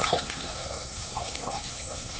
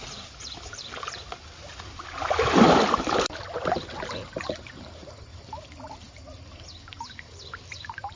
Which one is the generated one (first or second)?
first